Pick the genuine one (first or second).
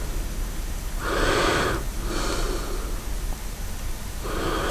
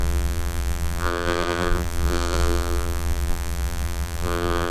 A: first